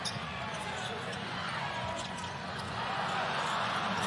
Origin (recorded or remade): remade